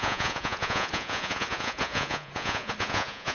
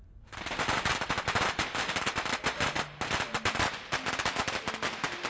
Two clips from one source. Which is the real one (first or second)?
second